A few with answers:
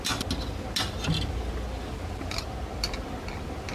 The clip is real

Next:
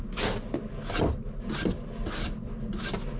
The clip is real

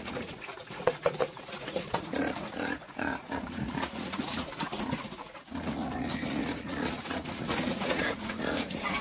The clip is fake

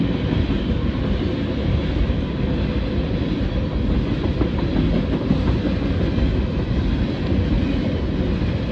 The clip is real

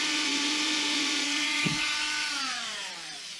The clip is fake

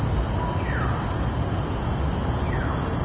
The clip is real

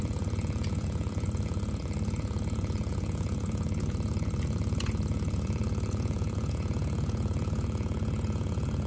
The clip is fake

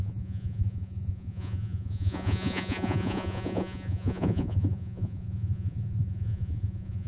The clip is fake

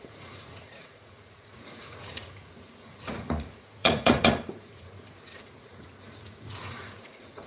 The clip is fake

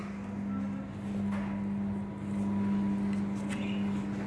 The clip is real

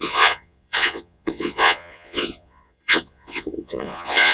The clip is fake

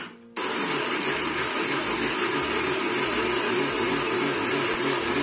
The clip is real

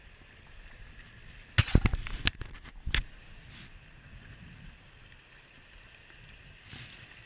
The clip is real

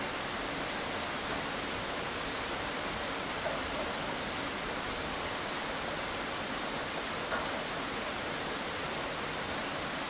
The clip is real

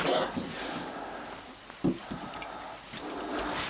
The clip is real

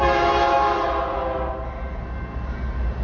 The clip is real